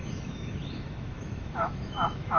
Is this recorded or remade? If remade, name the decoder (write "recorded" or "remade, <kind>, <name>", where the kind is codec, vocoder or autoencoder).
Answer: remade, autoencoder, DAC-VAE